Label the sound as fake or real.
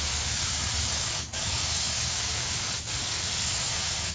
fake